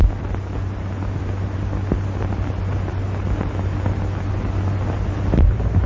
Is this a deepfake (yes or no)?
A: no